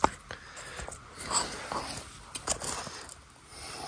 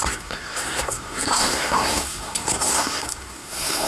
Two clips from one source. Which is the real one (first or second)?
first